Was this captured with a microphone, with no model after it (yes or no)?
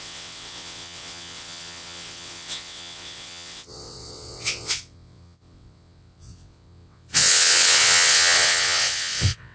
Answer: no